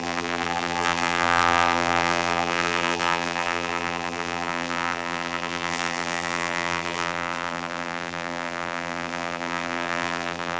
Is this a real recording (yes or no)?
no